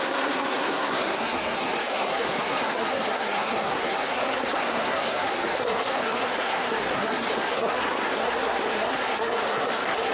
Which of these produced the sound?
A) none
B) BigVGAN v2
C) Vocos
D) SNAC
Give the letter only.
D